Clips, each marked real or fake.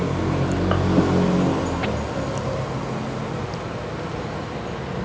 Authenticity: real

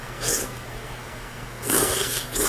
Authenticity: fake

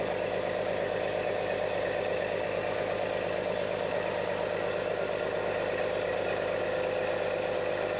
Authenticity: real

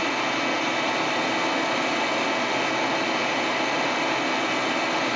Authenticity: real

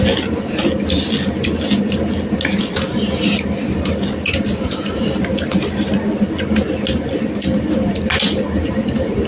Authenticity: real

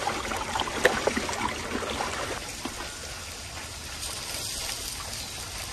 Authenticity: real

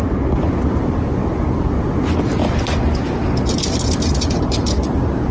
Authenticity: real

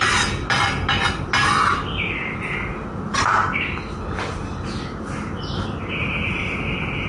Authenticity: real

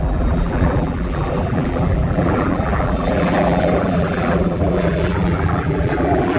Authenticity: fake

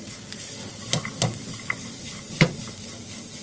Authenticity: real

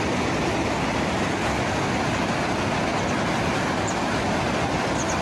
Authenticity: real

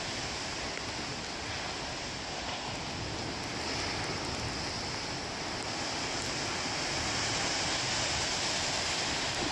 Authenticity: real